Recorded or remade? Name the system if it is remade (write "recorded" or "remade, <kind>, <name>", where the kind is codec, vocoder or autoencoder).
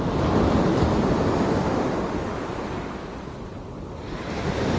remade, vocoder, BigVGAN v2